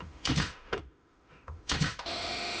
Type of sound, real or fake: fake